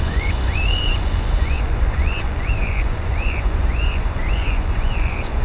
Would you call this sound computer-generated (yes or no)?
yes